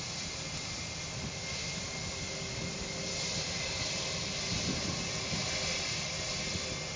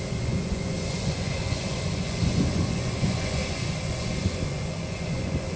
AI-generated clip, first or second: second